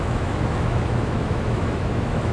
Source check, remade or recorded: remade